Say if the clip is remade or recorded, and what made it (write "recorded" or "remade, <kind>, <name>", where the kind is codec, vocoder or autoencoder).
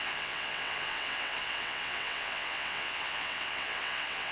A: remade, vocoder, WaveNeXt